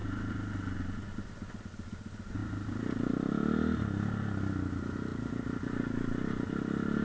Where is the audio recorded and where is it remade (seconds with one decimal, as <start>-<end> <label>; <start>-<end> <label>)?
0.0-7.0 recorded